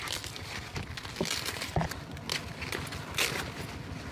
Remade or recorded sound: recorded